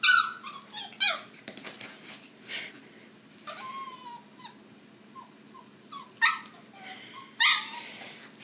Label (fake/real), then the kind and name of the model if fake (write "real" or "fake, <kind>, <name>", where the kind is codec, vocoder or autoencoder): real